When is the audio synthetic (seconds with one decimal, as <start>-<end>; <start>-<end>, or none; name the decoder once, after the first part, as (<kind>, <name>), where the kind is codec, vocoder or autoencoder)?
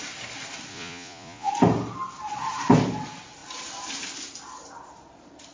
0.7-1.5 (vocoder, Vocos)